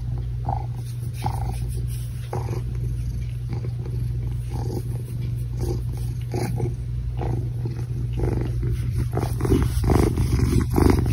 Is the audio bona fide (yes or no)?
yes